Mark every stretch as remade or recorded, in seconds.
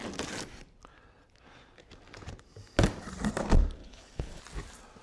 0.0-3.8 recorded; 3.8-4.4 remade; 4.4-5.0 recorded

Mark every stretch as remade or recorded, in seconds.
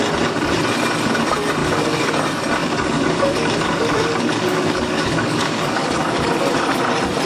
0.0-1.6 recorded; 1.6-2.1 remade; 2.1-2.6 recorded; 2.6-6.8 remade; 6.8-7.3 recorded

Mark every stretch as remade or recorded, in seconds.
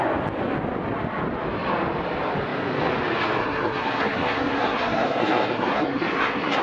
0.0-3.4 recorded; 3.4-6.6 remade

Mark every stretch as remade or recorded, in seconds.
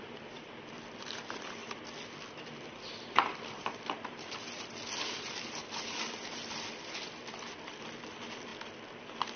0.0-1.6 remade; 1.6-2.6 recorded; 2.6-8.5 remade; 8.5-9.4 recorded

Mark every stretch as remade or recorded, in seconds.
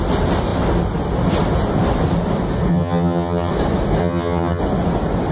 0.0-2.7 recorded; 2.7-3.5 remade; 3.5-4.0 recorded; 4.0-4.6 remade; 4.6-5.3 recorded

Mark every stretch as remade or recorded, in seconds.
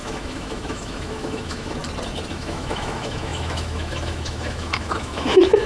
0.0-1.8 remade; 1.8-2.3 recorded; 2.3-5.7 remade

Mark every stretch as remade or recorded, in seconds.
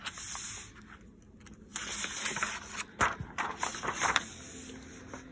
0.0-5.3 recorded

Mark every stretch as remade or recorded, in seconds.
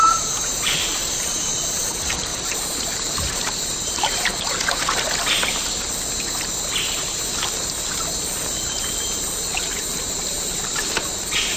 0.0-4.3 remade; 4.3-7.1 recorded; 7.1-11.6 remade